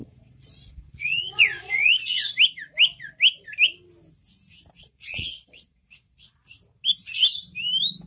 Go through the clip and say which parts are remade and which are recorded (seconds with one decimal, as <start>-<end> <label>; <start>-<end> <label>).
0.0-1.9 remade; 1.9-4.8 recorded; 4.8-6.5 remade; 6.5-8.1 recorded